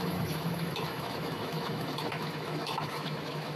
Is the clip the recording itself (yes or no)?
no